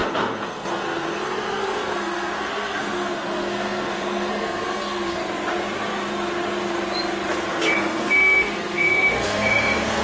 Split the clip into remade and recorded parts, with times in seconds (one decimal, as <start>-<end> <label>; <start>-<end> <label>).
0.0-5.2 remade; 5.2-7.5 recorded; 7.5-10.0 remade

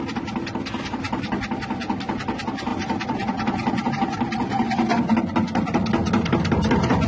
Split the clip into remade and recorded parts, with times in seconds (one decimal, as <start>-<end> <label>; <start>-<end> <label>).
0.0-7.1 recorded